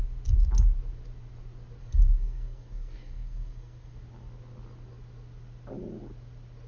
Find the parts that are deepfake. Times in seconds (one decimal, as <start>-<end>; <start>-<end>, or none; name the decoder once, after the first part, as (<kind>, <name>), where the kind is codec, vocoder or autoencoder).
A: 1.8-4.0 (codec, SNAC)